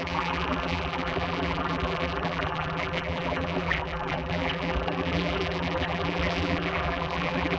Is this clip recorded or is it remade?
remade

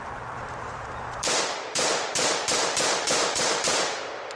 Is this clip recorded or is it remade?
remade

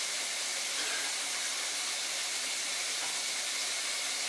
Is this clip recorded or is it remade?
remade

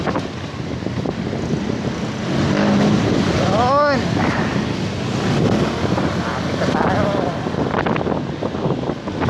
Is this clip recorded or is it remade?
recorded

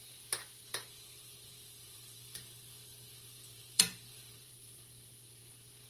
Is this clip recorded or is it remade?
remade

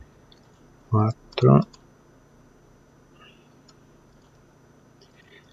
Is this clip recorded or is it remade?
recorded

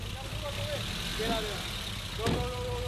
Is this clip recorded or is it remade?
recorded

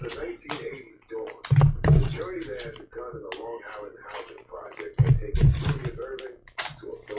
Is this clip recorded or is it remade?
recorded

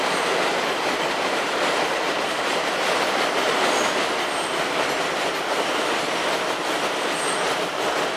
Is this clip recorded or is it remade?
remade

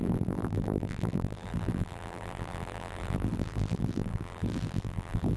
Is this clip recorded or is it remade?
remade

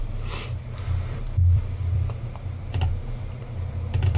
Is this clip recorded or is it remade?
remade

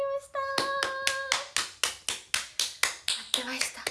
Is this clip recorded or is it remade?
recorded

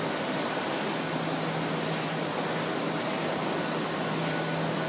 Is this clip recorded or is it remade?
recorded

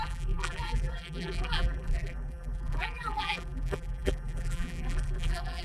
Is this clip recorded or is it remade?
remade